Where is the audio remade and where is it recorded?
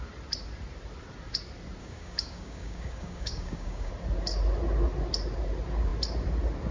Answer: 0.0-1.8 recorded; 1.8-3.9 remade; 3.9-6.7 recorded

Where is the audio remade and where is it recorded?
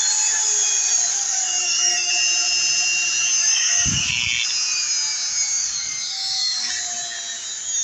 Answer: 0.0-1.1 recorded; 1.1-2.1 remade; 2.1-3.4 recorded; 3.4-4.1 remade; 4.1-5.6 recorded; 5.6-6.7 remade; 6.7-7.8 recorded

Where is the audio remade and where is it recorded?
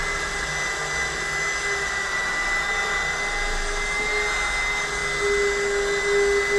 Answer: 0.0-6.6 recorded